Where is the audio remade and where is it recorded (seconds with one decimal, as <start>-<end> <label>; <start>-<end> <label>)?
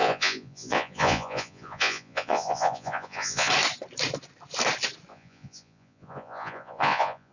0.0-3.5 remade; 3.5-5.1 recorded; 5.1-7.3 remade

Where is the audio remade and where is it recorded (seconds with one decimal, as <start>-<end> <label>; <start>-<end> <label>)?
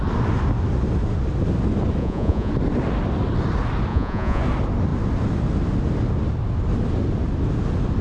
0.0-2.0 recorded; 2.0-2.5 remade; 2.5-3.9 recorded; 3.9-4.4 remade; 4.4-8.0 recorded